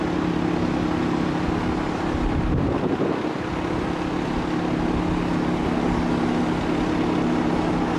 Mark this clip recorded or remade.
recorded